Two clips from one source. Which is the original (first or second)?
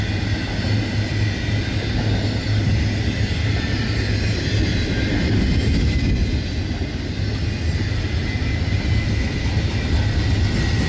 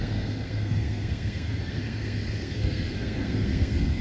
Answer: first